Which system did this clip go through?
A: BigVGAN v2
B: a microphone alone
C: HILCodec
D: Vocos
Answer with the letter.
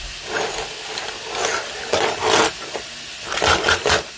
B